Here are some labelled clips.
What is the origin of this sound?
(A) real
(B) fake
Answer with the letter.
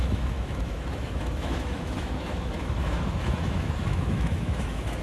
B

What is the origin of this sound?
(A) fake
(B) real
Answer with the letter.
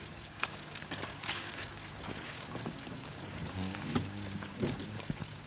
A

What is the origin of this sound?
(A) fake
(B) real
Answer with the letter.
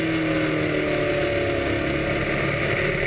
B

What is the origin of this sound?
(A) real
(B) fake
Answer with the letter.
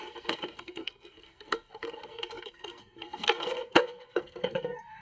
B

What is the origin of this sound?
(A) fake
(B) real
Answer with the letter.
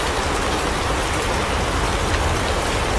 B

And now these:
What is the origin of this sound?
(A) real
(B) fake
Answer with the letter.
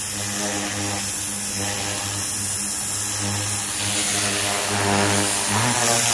A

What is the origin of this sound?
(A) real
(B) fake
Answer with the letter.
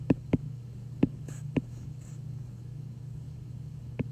B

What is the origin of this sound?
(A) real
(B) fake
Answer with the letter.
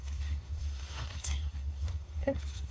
B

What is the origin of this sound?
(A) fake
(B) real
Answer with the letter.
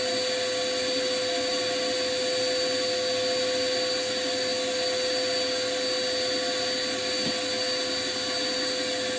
B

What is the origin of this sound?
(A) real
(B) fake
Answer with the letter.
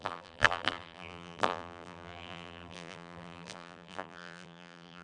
B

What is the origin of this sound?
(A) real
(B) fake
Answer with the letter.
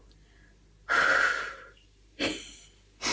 A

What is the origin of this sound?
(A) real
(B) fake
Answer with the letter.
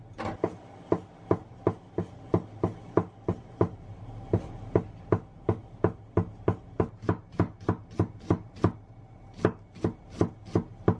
A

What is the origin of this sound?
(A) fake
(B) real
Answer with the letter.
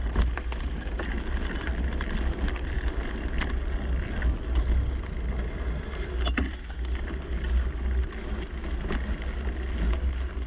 B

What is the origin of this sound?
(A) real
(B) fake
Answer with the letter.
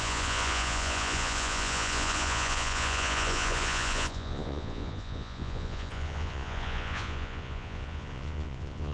B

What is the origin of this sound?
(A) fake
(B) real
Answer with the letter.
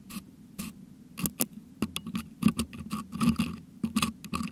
B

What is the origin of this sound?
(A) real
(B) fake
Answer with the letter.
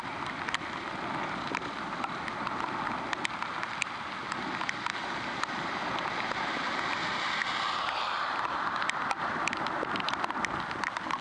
A